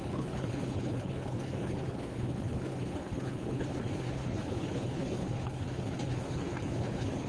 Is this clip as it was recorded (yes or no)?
no